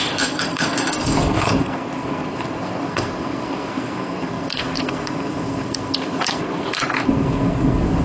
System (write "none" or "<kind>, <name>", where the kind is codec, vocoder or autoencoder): codec, SNAC